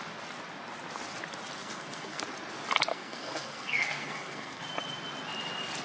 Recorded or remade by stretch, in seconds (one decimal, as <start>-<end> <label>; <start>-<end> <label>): 0.0-1.6 recorded; 1.6-2.2 remade; 2.2-2.9 recorded; 2.9-4.6 remade; 4.6-5.8 recorded